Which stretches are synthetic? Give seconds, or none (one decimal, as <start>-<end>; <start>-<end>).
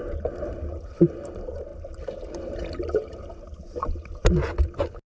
0.0-5.1